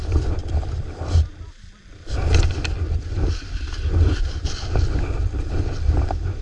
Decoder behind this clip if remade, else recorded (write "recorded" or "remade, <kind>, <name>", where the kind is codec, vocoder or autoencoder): recorded